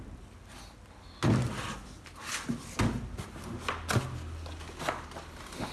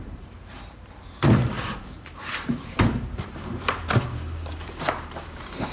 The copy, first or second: second